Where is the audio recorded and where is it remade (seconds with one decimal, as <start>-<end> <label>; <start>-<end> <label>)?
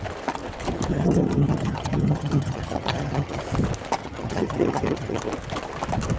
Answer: 0.0-0.9 recorded; 0.9-3.4 remade; 3.4-4.0 recorded; 4.0-5.2 remade; 5.2-6.2 recorded